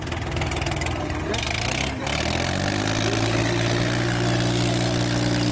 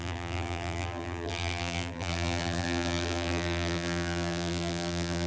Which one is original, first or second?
first